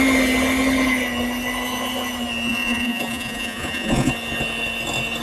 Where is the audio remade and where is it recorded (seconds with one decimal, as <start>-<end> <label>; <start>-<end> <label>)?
0.0-2.5 recorded; 2.5-4.1 remade; 4.1-5.2 recorded